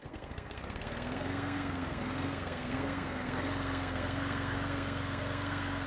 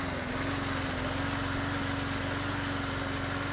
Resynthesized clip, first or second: first